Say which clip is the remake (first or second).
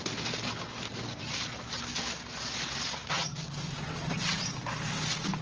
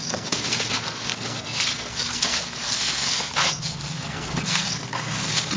second